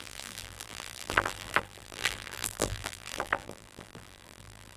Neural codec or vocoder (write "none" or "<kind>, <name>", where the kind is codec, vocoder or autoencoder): vocoder, BigVGAN v2